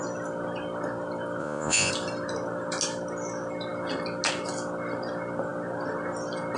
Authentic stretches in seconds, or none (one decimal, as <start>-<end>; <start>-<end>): 0.0-1.4; 1.9-6.6